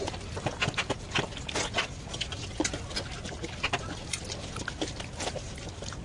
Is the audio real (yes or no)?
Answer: yes